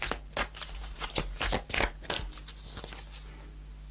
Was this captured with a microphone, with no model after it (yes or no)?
yes